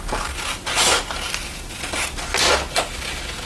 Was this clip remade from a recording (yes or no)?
no